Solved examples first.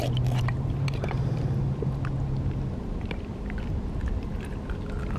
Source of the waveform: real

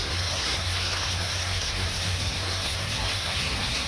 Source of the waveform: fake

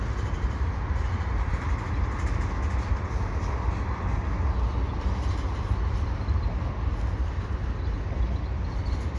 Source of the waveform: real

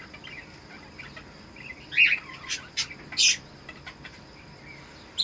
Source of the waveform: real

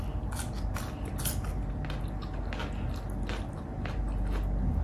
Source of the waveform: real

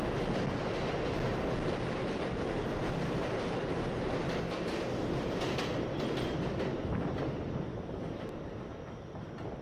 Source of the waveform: real